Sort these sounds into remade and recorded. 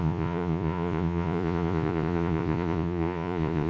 remade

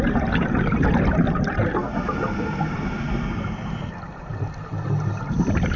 recorded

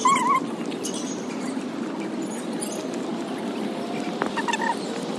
recorded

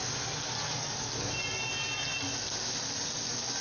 recorded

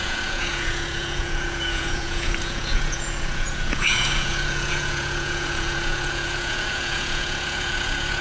remade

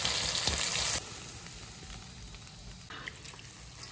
recorded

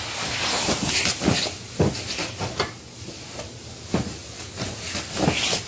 recorded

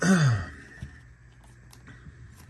recorded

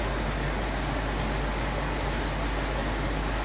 recorded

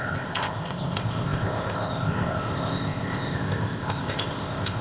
remade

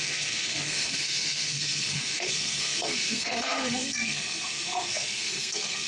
remade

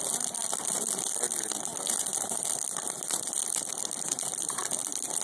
recorded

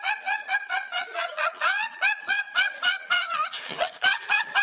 remade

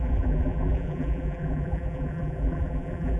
remade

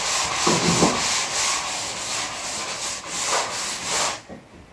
recorded